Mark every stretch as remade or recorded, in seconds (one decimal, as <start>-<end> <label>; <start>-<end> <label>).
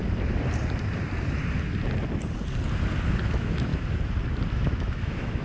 0.0-3.2 recorded; 3.2-3.7 remade; 3.7-4.5 recorded; 4.5-5.4 remade